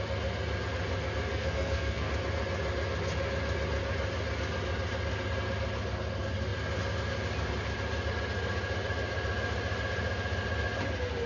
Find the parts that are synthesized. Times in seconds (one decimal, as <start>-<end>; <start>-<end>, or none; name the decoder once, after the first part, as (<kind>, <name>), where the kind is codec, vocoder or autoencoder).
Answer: 1.3-2.1 (codec, SNAC)